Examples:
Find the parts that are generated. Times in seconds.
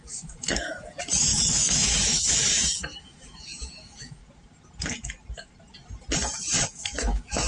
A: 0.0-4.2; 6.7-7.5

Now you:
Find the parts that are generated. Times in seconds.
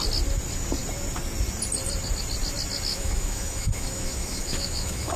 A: 2.9-5.2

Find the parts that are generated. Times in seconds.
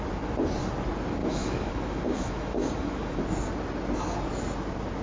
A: 1.2-3.2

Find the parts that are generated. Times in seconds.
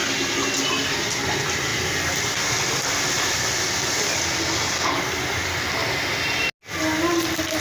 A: none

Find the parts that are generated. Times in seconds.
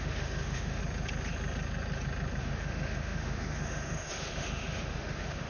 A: 0.0-0.8; 2.4-5.5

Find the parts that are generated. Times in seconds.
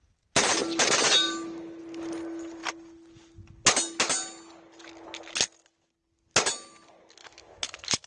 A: 7.2-8.1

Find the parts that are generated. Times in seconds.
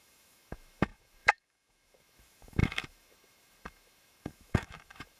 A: 0.0-5.2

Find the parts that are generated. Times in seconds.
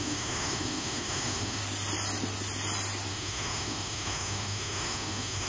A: 0.0-1.6; 3.1-5.5